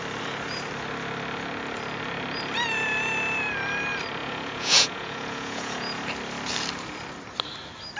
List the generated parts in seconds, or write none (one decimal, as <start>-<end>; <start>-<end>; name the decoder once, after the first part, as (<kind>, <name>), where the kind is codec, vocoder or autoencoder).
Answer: 4.2-6.0 (vocoder, Vocos)